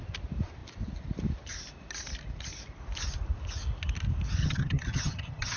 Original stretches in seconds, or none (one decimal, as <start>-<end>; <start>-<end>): 0.0-4.4